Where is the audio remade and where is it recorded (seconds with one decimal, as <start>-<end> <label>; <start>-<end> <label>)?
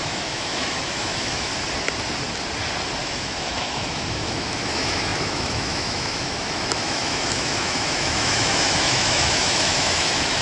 0.0-1.5 remade; 1.5-3.0 recorded; 3.0-10.4 remade